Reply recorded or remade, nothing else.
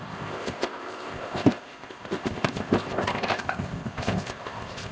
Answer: remade